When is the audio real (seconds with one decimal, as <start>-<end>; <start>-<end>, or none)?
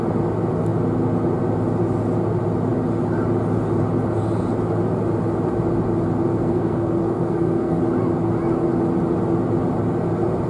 0.0-6.3; 7.7-10.5